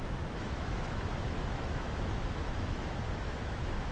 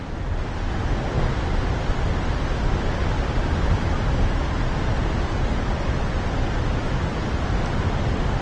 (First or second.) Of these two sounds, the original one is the second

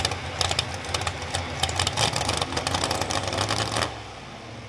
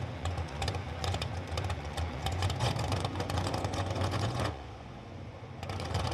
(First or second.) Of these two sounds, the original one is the first